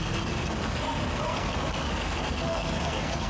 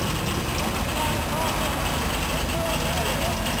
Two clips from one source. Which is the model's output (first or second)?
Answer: first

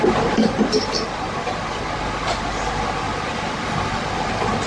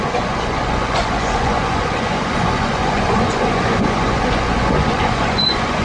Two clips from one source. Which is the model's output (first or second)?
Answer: second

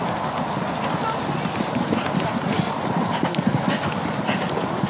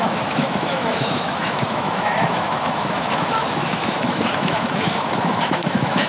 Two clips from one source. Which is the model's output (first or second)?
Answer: second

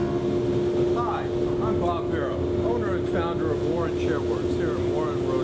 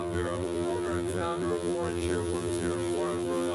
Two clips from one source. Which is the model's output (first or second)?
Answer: second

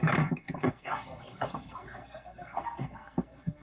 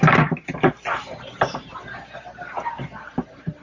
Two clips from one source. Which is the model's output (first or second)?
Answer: first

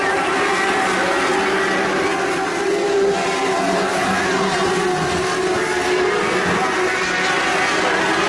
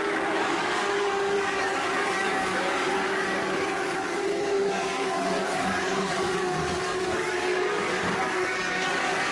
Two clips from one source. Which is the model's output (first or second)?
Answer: second